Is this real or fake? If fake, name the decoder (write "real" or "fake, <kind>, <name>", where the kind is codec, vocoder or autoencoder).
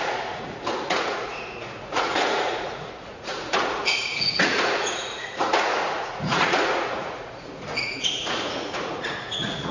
fake, vocoder, Vocos